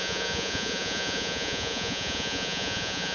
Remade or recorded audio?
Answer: remade